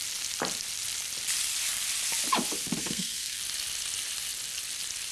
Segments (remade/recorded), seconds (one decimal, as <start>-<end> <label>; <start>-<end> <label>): 0.0-2.8 recorded; 2.8-3.4 remade; 3.4-5.1 recorded